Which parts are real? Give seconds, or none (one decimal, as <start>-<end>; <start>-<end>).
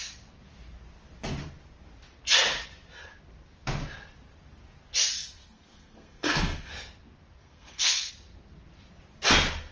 0.0-5.1; 6.7-7.4; 8.1-9.7